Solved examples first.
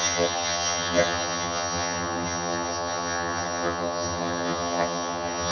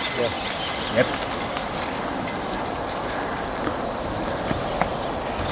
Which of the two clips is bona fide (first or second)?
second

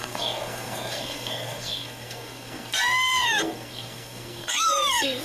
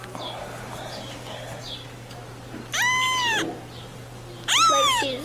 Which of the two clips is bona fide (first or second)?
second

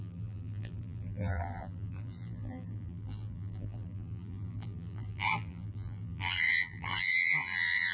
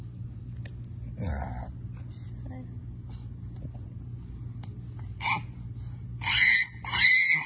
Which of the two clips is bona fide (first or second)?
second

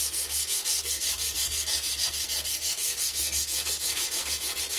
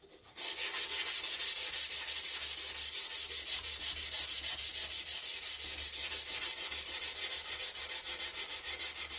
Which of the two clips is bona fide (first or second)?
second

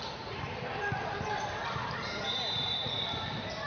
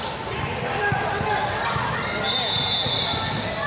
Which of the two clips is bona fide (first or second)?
second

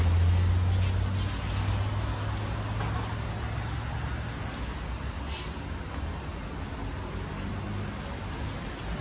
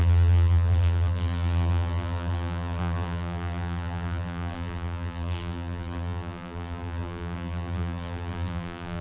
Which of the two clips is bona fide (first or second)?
first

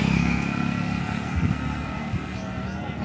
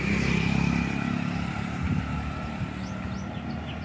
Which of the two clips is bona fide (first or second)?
second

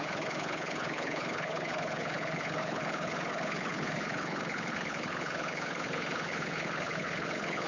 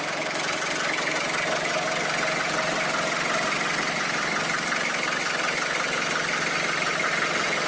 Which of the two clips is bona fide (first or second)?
second